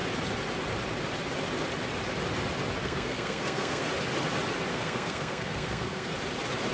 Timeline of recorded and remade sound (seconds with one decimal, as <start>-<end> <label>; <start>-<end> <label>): 0.0-2.8 recorded; 2.8-3.9 remade; 3.9-4.7 recorded; 4.7-6.1 remade; 6.1-6.7 recorded